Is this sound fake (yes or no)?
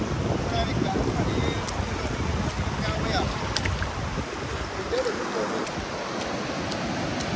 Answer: no